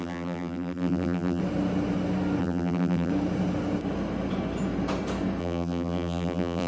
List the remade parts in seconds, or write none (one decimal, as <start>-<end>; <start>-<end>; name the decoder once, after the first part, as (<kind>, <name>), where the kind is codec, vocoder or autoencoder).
0.0-1.4 (vocoder, BigVGAN v2); 2.4-3.1; 5.4-6.7